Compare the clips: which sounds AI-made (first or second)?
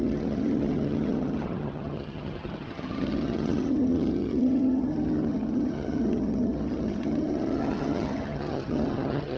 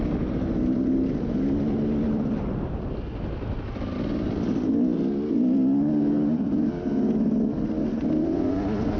first